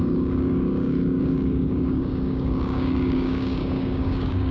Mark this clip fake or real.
fake